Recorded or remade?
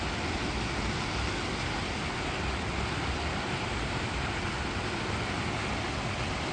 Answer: recorded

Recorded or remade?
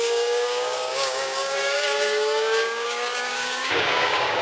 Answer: remade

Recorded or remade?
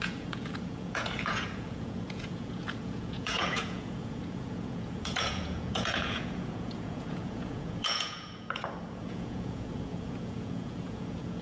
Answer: remade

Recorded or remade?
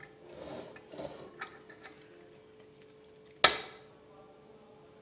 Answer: recorded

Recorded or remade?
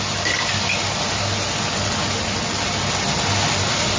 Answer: recorded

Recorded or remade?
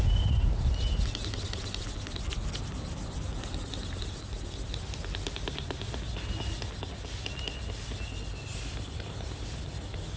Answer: recorded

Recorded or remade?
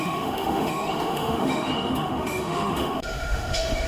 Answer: remade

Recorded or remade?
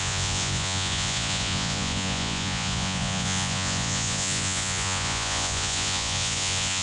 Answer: remade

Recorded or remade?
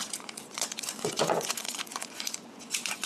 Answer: remade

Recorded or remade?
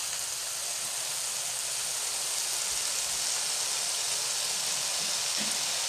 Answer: recorded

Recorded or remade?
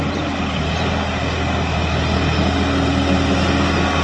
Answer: recorded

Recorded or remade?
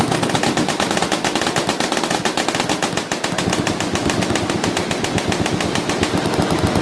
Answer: recorded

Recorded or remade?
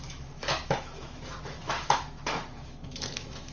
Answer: remade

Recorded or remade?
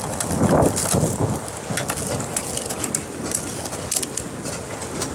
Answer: recorded